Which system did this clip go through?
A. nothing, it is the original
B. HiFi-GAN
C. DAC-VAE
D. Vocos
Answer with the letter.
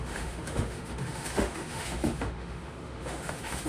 C